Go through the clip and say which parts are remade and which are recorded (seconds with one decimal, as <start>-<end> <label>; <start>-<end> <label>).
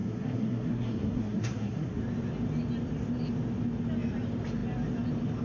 0.0-2.0 remade; 2.0-5.4 recorded